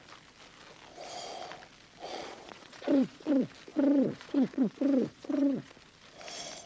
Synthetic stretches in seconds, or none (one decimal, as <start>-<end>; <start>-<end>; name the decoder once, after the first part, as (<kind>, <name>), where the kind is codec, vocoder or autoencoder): 2.1-3.3 (vocoder, Vocos); 3.7-5.7